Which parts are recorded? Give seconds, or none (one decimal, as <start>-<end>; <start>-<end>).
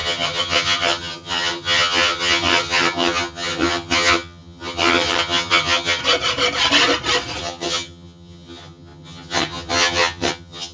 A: 6.0-7.4